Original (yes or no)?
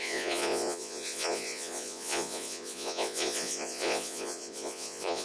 no